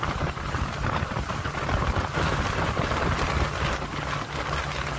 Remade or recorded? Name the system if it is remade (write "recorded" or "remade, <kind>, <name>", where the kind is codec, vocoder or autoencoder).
recorded